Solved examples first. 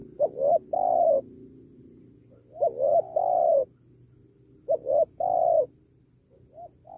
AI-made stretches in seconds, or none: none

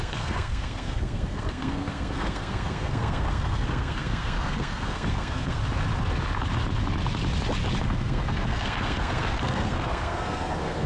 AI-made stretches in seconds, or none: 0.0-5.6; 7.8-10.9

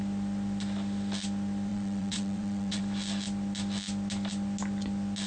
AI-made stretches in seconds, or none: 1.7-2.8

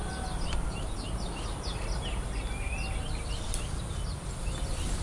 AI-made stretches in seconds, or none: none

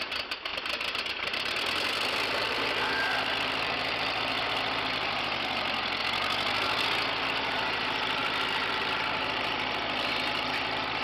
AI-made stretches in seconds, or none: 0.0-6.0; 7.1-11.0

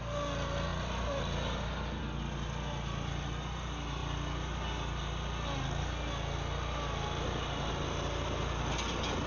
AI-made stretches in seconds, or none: none

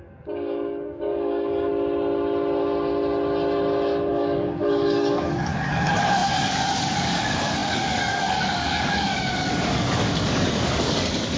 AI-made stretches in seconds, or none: 0.0-1.7; 4.1-11.4

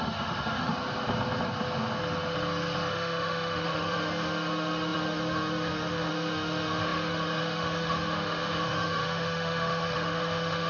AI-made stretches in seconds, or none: 0.0-0.7; 2.9-10.7